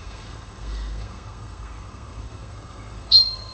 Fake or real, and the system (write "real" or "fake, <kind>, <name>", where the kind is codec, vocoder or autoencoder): fake, codec, SNAC